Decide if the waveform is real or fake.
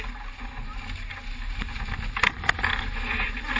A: real